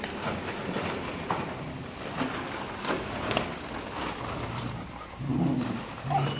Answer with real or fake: real